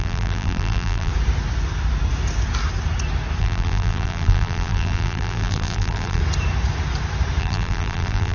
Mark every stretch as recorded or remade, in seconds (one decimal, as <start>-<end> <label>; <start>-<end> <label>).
0.0-1.1 remade; 1.1-3.4 recorded; 3.4-6.2 remade; 6.2-7.4 recorded; 7.4-8.3 remade